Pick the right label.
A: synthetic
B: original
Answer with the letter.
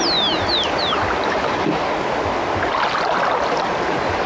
B